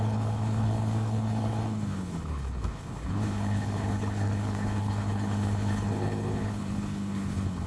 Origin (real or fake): fake